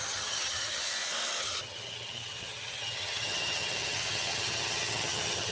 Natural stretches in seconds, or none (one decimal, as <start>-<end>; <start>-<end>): 0.8-1.4